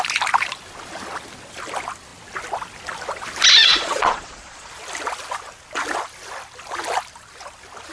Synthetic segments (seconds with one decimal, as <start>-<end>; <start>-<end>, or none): 3.6-4.7